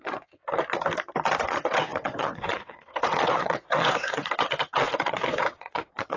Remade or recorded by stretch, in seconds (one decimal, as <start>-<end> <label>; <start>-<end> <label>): 0.0-0.4 remade; 0.4-1.4 recorded; 1.4-6.2 remade

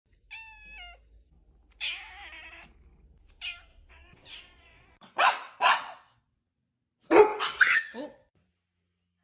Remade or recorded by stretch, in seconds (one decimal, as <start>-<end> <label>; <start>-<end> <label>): 0.0-3.7 recorded; 3.7-6.7 remade; 6.7-7.3 recorded; 7.3-8.5 remade; 8.5-9.2 recorded

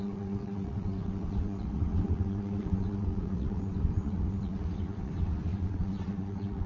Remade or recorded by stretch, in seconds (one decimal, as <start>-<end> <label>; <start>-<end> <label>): 0.0-6.7 remade

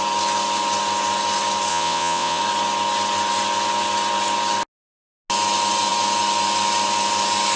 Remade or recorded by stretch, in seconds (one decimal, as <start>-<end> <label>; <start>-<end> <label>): 0.0-1.7 recorded; 1.7-2.4 remade; 2.4-7.6 recorded